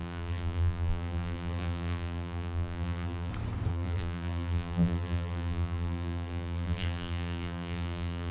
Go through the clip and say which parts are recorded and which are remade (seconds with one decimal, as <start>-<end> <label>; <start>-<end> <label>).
0.0-3.3 remade; 3.3-3.7 recorded; 3.7-8.3 remade